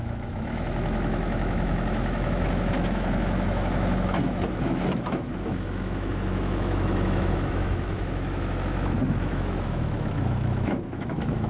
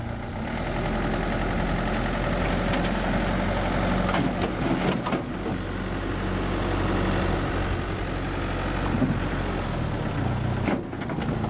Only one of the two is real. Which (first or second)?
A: second